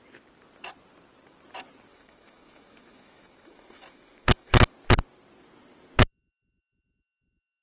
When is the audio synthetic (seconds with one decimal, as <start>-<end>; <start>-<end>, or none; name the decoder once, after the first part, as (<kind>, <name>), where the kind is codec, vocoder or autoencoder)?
1.9-4.7 (autoencoder, DAC-VAE)